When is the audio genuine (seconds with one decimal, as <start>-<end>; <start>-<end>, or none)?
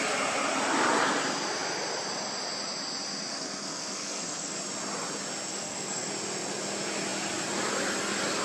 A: 0.0-3.3; 4.6-5.5; 6.1-8.4